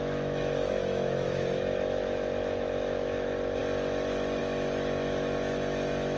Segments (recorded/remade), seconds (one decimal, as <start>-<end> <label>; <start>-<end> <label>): 0.0-3.6 remade; 3.6-4.4 recorded; 4.4-6.2 remade